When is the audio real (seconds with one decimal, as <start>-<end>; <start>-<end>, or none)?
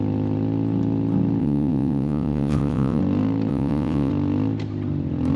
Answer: 0.0-1.4; 3.0-3.5; 4.1-5.4